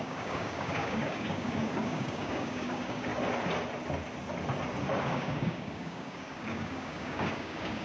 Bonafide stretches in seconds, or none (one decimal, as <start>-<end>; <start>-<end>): 3.1-5.0